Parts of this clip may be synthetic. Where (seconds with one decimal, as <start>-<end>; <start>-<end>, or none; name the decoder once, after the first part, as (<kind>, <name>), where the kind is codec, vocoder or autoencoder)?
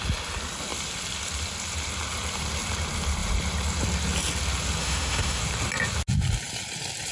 4.8-5.4 (autoencoder, DAC-VAE)